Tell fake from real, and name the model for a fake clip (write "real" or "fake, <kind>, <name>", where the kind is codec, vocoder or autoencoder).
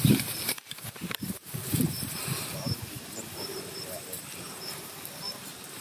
fake, vocoder, BigVGAN v2